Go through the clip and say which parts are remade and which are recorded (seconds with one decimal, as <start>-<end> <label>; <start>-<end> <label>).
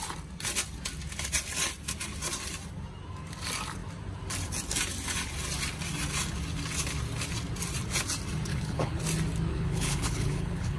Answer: 0.0-8.5 recorded; 8.5-9.0 remade; 9.0-9.5 recorded; 9.5-10.8 remade